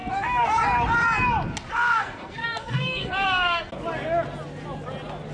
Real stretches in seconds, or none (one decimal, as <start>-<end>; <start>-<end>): 0.6-1.7; 3.7-5.3